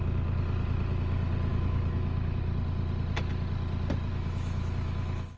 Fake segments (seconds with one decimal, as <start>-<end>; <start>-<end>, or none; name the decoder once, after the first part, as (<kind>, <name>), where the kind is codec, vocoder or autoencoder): 1.5-2.4 (autoencoder, DAC-VAE); 4.1-5.4